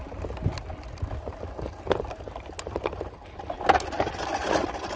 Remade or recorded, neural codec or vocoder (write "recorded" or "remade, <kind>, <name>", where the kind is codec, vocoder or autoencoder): recorded